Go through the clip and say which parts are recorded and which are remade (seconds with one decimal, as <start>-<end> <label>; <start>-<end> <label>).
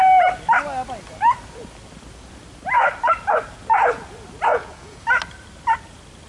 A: 0.0-4.5 recorded; 4.5-5.0 remade; 5.0-6.3 recorded